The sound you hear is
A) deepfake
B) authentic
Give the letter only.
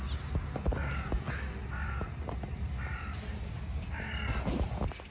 B